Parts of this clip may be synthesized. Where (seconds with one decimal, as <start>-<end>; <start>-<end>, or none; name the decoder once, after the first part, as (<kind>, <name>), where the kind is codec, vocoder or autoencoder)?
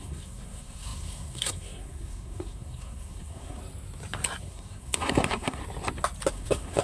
0.0-3.6 (codec, SNAC); 4.4-5.6; 6.3-6.8